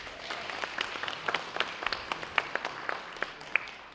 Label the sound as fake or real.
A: real